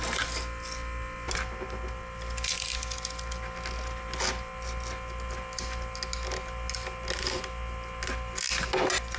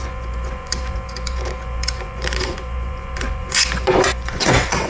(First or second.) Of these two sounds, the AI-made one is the second